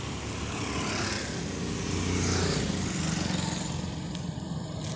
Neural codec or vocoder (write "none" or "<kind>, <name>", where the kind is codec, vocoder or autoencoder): none